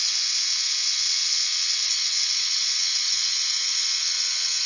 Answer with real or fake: fake